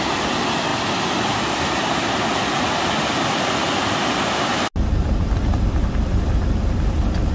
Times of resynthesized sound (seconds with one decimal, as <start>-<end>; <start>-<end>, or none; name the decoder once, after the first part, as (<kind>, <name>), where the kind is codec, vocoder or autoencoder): none

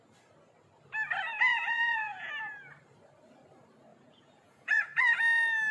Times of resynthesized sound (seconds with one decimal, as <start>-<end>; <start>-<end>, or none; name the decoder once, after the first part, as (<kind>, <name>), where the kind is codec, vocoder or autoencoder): 1.5-2.3 (vocoder, Vocos); 3.9-5.2

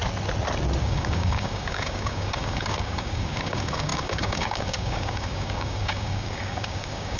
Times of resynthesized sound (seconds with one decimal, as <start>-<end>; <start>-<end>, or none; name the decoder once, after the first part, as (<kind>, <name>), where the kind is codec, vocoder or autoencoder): 0.8-7.2 (codec, DAC)

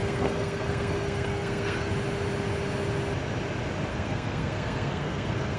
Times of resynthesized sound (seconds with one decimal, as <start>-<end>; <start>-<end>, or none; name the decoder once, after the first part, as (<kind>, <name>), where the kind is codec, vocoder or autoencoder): 0.0-1.9 (codec, SNAC); 3.9-5.6

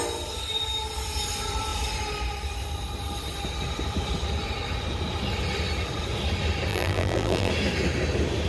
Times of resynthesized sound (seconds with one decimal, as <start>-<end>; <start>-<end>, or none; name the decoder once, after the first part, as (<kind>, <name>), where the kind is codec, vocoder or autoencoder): 6.7-7.5 (vocoder, BigVGAN v2)

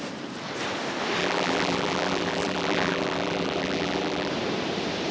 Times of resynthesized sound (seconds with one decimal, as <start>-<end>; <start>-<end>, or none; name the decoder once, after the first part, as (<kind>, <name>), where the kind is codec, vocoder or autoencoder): 1.2-4.3 (vocoder, BigVGAN v2)

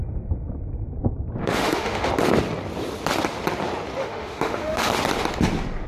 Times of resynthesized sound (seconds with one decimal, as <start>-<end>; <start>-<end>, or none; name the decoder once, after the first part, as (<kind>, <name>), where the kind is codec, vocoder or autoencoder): 1.4-2.1 (autoencoder, DAC-VAE); 4.0-4.9

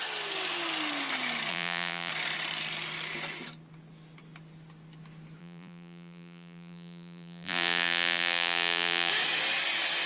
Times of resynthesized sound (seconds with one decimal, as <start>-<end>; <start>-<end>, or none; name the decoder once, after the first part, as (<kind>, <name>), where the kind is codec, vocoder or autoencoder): 1.5-2.1 (vocoder, BigVGAN v2); 5.4-9.1